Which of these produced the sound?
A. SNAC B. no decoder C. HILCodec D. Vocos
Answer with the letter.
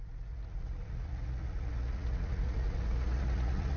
D